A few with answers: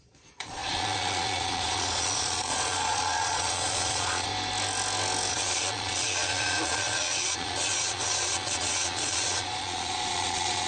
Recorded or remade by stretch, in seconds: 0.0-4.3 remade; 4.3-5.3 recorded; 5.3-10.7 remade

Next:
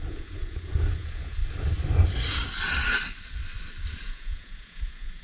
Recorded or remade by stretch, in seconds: 0.0-1.4 remade; 1.4-4.0 recorded; 4.0-5.2 remade

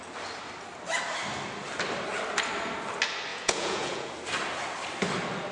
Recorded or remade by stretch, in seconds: 0.0-3.3 recorded; 3.3-4.1 remade; 4.1-5.5 recorded

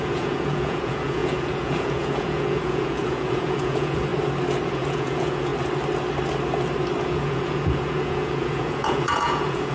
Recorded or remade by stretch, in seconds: 0.0-4.1 remade; 4.1-4.7 recorded; 4.7-5.5 remade; 5.5-7.0 recorded; 7.0-9.7 remade

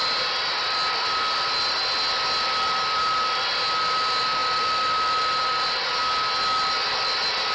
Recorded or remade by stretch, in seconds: 0.0-7.5 recorded

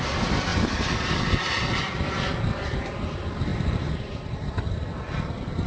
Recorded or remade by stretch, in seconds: 0.0-5.7 recorded

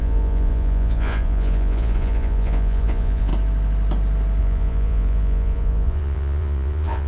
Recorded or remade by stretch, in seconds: 0.0-3.3 remade; 3.3-4.4 recorded; 4.4-7.1 remade

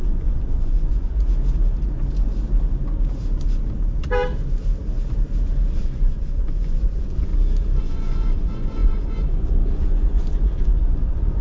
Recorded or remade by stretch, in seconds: 0.0-1.3 remade; 1.3-5.8 recorded; 5.8-7.3 remade; 7.3-7.8 recorded; 7.8-11.4 remade